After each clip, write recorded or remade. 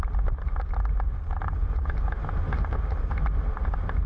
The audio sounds recorded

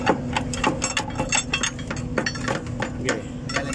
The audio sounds recorded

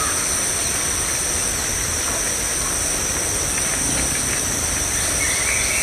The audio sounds recorded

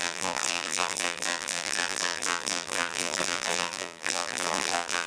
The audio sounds remade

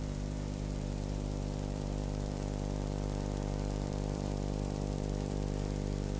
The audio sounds remade